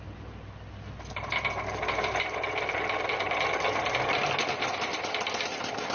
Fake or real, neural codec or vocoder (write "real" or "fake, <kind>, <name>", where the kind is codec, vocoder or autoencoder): real